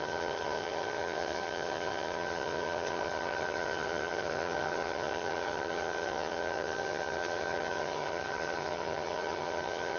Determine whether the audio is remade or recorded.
remade